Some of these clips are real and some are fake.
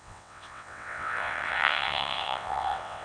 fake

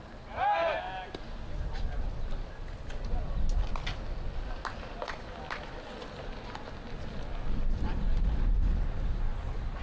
real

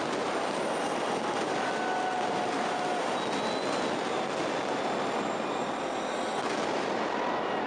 real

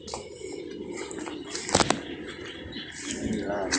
real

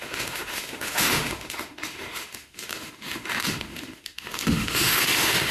fake